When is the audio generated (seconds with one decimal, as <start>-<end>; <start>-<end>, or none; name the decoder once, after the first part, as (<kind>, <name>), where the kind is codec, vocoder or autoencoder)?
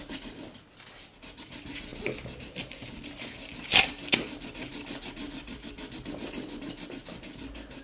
none